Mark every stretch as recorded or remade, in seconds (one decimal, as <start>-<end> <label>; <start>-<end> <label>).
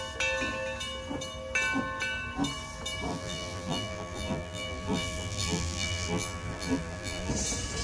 0.0-3.1 recorded; 3.1-7.3 remade; 7.3-7.8 recorded